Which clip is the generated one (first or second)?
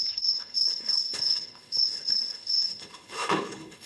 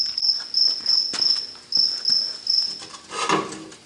first